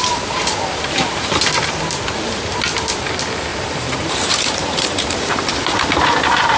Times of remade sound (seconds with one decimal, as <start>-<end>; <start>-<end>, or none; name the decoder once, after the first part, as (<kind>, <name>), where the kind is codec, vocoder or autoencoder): 3.5-5.5 (vocoder, BigVGAN v2)